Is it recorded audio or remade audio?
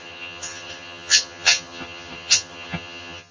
remade